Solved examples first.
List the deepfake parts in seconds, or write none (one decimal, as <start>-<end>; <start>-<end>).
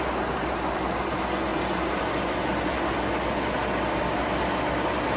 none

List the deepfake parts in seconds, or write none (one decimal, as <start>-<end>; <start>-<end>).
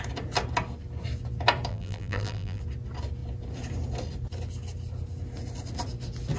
1.7-2.6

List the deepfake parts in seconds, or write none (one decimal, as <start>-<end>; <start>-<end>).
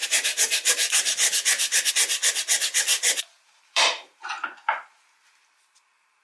0.0-1.9; 2.9-4.2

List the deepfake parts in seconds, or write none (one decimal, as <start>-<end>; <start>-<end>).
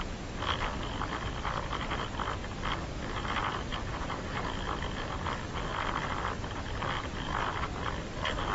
3.7-4.4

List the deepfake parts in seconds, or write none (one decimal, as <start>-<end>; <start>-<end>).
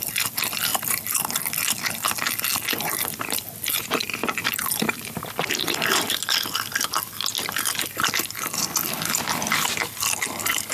0.7-1.8; 4.0-6.2